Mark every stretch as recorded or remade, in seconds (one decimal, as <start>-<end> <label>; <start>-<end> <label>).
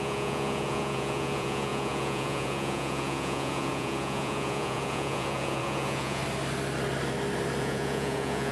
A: 0.0-6.2 remade; 6.2-7.6 recorded; 7.6-8.5 remade